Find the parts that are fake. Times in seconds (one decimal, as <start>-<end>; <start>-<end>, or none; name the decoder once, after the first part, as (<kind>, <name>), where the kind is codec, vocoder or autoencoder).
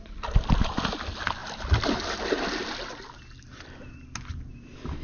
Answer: none